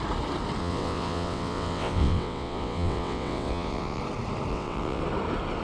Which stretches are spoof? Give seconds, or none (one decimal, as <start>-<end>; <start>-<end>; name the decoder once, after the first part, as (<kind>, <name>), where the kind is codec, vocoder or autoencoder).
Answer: 0.6-4.0 (vocoder, WaveNeXt); 4.5-5.0